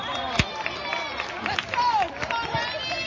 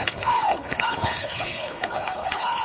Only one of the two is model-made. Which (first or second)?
second